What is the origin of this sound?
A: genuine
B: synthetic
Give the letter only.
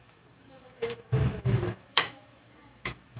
B